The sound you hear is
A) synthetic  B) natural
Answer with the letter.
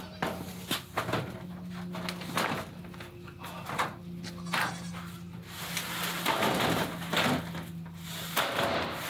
B